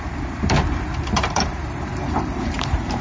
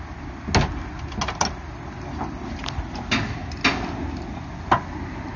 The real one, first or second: second